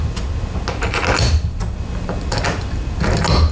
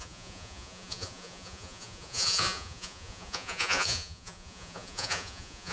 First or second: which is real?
first